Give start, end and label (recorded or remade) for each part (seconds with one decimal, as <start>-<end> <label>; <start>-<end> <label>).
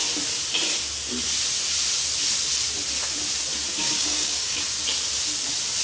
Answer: 0.0-3.7 recorded; 3.7-4.6 remade; 4.6-5.8 recorded